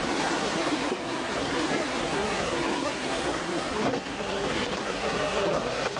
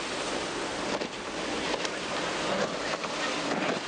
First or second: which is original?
second